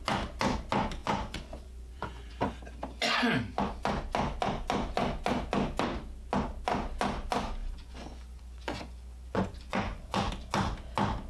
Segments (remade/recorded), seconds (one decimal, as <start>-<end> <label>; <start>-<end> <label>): 0.0-1.0 recorded; 1.0-2.3 remade; 2.3-7.6 recorded; 7.6-10.3 remade; 10.3-11.3 recorded